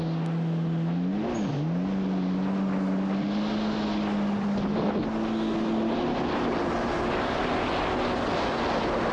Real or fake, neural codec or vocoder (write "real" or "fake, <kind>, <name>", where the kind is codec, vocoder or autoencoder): real